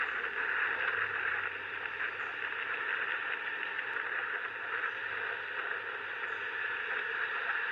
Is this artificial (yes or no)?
no